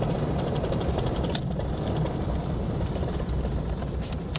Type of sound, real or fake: fake